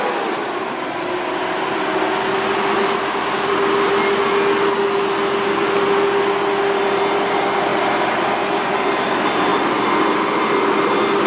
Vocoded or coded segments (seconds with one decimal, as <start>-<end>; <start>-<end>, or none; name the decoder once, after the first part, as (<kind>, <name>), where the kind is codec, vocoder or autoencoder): 7.7-8.7 (vocoder, BigVGAN v2); 9.5-10.9